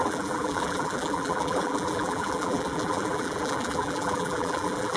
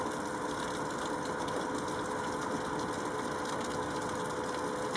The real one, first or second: second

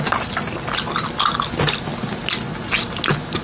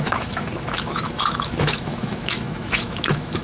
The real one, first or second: first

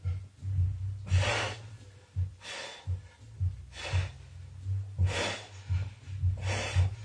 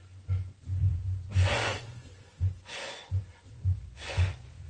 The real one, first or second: first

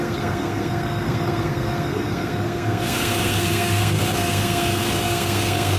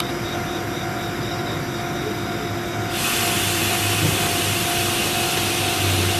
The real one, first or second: second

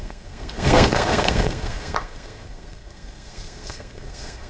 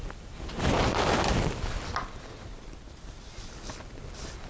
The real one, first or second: second